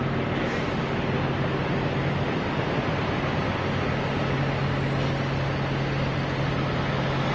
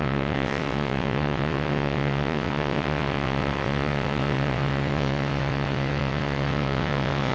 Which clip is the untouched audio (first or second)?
first